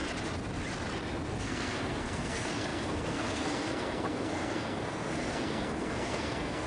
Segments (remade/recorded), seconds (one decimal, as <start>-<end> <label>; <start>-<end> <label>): 0.0-1.4 recorded; 1.4-6.7 remade